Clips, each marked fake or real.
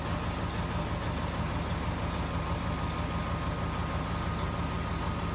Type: real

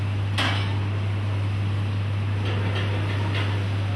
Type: real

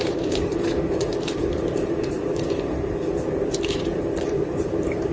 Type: fake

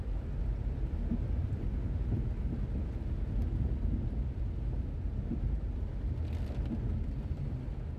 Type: real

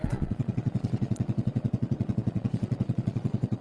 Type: fake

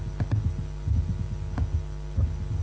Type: real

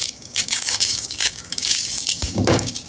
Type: fake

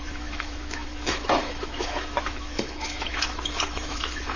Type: fake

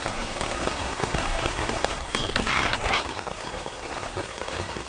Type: fake